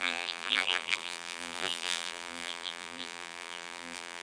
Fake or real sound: fake